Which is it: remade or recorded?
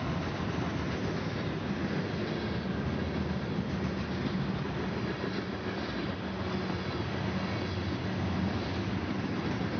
recorded